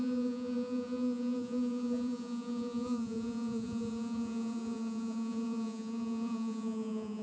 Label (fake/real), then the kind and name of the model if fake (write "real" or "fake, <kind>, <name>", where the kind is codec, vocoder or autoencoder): fake, vocoder, Vocos